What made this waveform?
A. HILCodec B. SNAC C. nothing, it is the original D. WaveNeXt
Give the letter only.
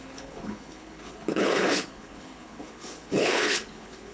A